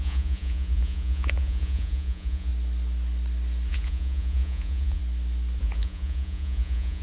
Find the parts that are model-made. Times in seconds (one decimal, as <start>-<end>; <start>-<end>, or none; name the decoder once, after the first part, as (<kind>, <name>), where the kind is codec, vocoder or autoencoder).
0.0-2.5 (vocoder, Vocos); 3.7-5.0; 5.6-7.0